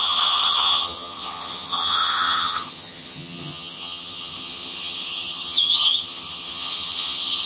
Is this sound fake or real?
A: fake